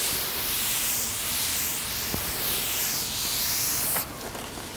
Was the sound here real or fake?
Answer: real